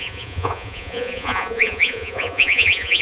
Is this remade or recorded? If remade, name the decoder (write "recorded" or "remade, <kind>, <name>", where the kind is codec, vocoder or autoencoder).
remade, vocoder, Vocos